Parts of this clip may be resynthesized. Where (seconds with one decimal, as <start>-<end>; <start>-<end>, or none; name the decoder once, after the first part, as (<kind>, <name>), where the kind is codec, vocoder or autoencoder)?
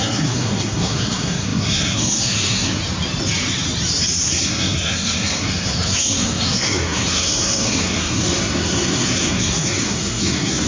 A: 0.0-2.8 (codec, SNAC); 4.3-10.7